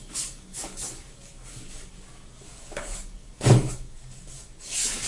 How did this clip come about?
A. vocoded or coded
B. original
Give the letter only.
A